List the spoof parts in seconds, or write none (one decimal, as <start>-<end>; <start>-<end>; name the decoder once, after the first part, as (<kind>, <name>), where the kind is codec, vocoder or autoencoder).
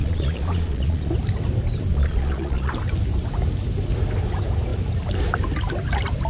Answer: 0.0-1.1 (vocoder, Vocos); 1.9-2.7